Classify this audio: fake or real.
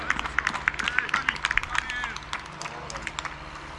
real